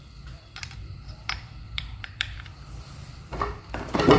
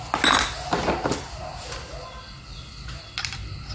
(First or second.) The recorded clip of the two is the second